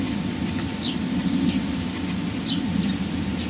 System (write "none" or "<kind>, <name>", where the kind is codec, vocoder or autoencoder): none